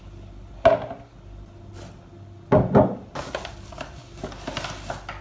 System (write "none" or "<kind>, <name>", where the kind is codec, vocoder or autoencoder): none